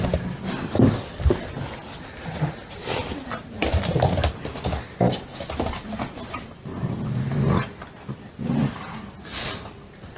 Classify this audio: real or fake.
real